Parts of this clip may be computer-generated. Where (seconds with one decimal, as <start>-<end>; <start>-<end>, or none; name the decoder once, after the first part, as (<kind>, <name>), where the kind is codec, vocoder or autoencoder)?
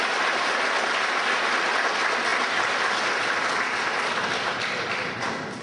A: none